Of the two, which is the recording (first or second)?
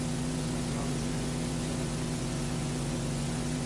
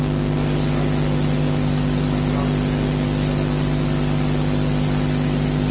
second